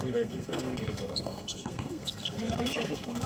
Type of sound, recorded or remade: remade